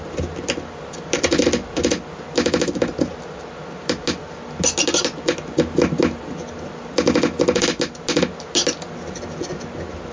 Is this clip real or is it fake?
real